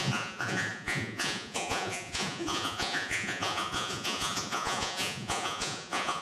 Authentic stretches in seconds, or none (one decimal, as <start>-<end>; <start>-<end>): none